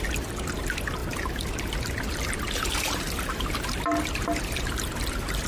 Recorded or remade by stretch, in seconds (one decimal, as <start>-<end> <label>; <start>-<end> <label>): 0.0-5.5 recorded